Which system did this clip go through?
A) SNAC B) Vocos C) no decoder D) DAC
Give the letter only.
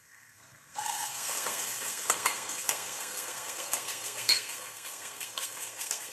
A